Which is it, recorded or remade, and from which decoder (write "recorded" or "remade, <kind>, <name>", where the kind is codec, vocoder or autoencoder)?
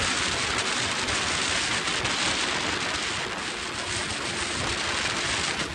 recorded